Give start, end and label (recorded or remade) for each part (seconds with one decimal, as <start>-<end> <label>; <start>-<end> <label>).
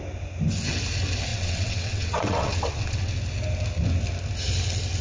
0.0-1.3 recorded; 1.3-3.1 remade; 3.1-5.0 recorded